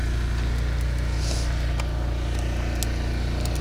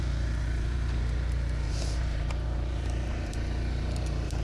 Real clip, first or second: first